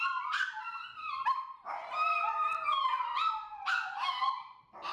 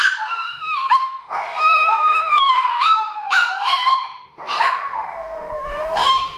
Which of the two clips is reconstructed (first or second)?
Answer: second